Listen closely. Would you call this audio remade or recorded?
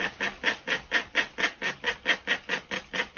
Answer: recorded